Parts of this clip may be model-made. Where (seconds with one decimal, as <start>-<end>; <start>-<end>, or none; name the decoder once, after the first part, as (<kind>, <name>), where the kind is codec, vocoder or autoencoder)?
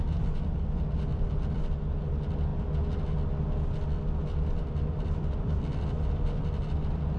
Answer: 1.1-1.7 (vocoder, BigVGAN v2); 2.5-3.0; 4.2-6.7